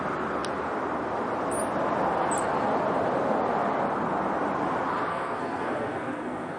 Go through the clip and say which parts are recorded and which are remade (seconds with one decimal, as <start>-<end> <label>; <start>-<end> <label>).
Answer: 0.0-5.1 recorded; 5.1-6.6 remade